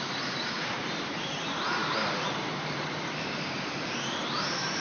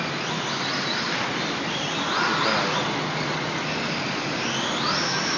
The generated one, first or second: first